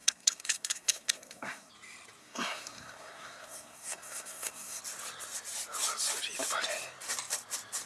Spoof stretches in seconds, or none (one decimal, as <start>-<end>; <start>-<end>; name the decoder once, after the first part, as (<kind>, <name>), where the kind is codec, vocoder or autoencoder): 0.0-1.7 (codec, SNAC); 2.2-4.8